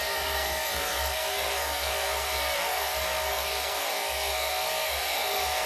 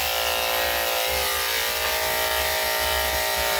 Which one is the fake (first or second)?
first